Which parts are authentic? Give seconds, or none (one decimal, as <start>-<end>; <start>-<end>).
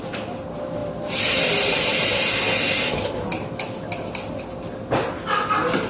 0.0-0.8; 1.5-5.9